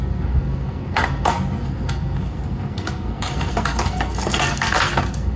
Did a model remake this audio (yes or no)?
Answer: yes